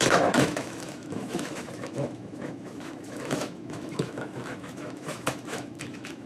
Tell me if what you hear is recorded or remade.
remade